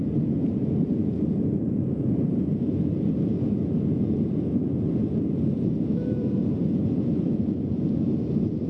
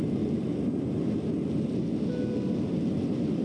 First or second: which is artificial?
first